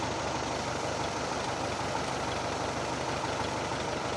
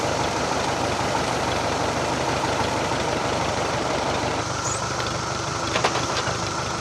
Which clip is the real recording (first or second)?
first